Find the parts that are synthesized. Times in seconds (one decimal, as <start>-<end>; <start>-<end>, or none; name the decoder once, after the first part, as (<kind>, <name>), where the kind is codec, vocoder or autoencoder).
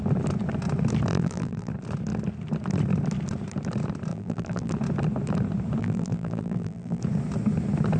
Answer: 1.1-1.7 (vocoder, BigVGAN v2); 4.1-4.7; 5.8-7.0